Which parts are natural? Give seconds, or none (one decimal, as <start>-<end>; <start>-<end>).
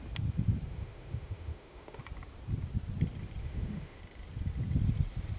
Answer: 0.0-0.7; 2.0-3.4; 4.0-5.4